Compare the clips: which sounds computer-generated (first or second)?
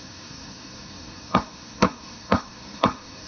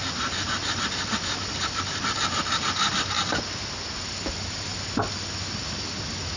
first